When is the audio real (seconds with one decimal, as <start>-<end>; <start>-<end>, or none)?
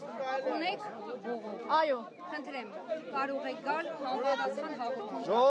0.0-5.5